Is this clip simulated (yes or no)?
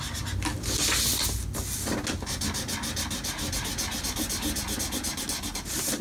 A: no